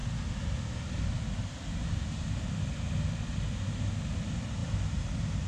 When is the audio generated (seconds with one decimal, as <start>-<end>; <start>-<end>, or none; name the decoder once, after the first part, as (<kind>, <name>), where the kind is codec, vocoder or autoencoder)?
none

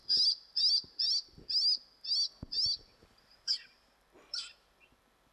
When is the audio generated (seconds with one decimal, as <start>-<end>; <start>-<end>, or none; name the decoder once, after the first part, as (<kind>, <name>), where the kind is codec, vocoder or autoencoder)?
none

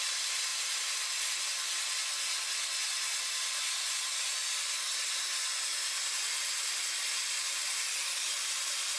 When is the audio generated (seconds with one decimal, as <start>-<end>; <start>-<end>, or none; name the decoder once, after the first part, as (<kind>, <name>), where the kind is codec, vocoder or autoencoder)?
0.5-1.4 (vocoder, BigVGAN v2)

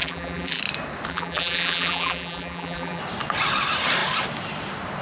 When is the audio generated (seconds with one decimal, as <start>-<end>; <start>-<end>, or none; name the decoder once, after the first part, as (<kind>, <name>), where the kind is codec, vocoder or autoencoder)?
0.0-0.6 (vocoder, BigVGAN v2); 1.1-3.0

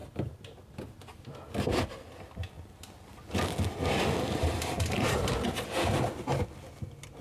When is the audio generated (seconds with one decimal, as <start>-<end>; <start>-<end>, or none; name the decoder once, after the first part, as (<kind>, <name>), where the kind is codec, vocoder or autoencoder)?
none

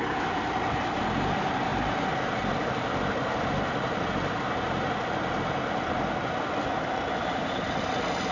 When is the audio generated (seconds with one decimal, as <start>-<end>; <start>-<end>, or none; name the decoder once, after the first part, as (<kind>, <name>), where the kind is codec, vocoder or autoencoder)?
none